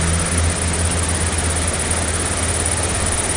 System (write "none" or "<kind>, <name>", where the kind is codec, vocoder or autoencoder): none